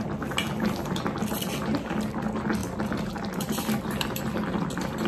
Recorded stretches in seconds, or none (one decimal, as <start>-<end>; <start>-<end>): 0.0-2.6; 4.2-5.1